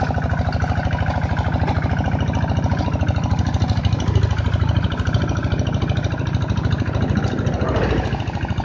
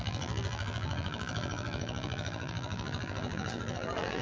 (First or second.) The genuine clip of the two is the first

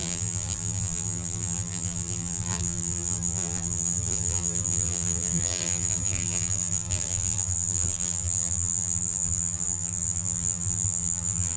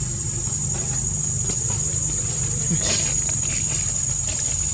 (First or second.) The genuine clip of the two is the second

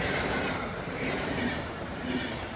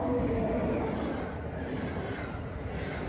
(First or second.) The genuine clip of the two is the second